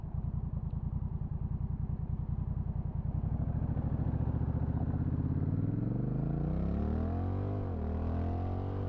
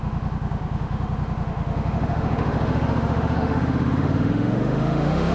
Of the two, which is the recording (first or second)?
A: first